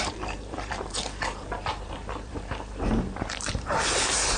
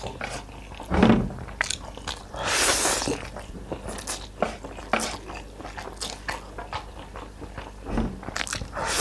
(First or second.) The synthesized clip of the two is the first